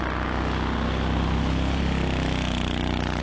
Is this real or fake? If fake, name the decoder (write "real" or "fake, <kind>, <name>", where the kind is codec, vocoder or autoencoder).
real